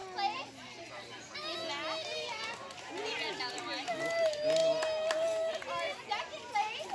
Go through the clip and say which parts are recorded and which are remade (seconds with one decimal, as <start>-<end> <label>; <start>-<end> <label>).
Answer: 0.0-6.9 recorded